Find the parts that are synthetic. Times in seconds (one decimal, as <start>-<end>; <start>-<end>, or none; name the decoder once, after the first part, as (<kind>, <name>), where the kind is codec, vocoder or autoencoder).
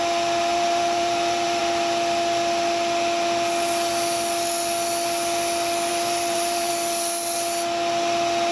0.5-1.6 (vocoder, BigVGAN v2); 5.9-6.7